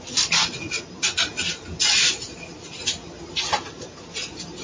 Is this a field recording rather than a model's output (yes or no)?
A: yes